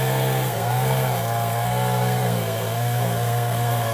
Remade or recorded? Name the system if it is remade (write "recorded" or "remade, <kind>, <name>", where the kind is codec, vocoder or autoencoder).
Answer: remade, codec, SNAC